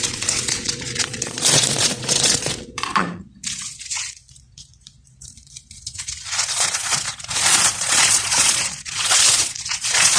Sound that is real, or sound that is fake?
fake